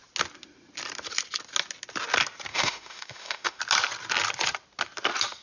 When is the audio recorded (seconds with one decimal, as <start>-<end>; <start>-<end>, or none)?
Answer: 0.0-2.5; 3.6-5.4